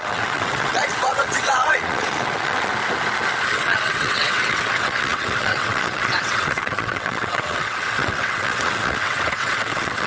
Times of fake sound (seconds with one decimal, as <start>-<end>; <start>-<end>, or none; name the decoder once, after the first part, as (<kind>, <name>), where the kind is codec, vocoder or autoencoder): 0.0-2.7 (vocoder, WaveNeXt); 3.5-10.1